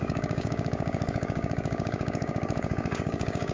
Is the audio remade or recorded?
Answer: remade